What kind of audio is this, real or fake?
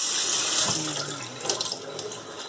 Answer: real